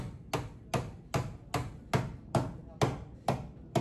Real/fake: real